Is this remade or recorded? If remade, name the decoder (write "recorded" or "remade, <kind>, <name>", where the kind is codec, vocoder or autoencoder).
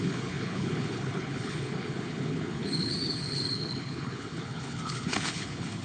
remade, codec, HILCodec